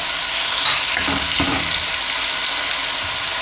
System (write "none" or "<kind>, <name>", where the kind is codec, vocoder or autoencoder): none